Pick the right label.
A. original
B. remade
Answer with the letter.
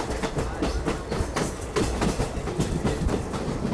A